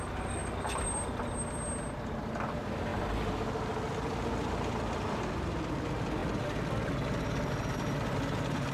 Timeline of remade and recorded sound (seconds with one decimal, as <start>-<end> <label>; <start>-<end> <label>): 0.0-8.7 recorded